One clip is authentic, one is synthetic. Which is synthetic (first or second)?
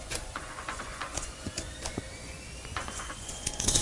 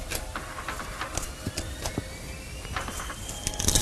first